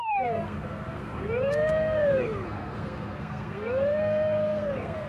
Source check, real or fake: fake